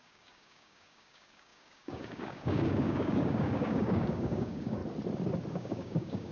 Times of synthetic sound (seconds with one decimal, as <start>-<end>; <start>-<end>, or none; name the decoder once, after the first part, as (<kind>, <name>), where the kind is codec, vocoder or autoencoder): 0.0-4.8 (codec, DAC); 5.5-6.3